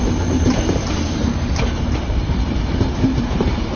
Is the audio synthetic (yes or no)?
yes